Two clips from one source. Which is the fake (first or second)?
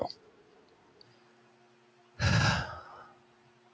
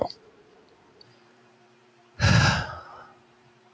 second